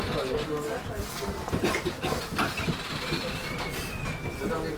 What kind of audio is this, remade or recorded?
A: recorded